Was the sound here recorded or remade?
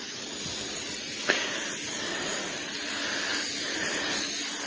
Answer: recorded